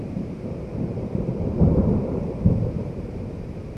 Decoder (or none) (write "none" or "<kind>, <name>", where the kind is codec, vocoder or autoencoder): vocoder, BigVGAN v2